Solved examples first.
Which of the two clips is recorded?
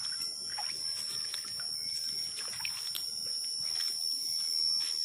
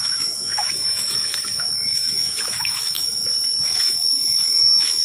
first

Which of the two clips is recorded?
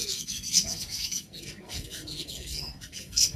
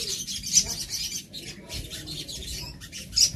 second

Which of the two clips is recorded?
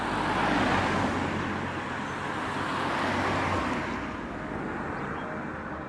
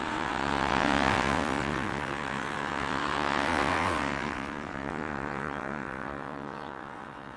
first